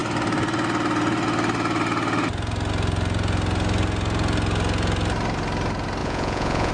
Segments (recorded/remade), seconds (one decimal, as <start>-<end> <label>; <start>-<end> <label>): 0.0-6.0 recorded; 6.0-6.7 remade